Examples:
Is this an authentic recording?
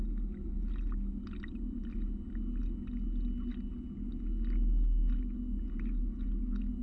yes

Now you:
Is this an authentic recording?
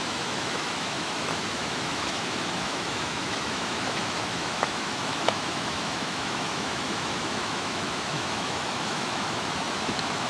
no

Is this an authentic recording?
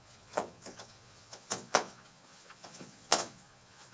no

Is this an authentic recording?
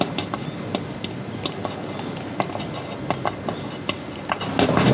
yes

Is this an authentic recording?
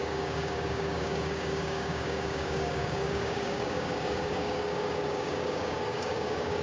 no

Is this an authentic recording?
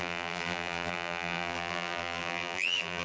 no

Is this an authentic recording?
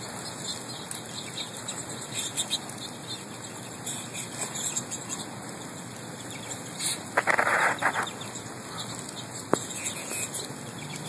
yes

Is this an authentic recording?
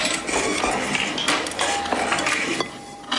yes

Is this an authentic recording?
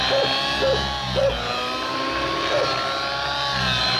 yes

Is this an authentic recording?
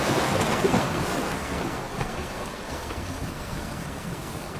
no